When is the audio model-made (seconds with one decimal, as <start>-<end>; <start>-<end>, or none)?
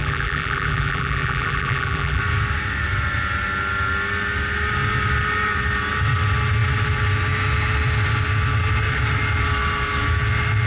0.0-2.2